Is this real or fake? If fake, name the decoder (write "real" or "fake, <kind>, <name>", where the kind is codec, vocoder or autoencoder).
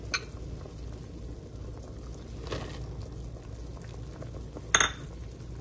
real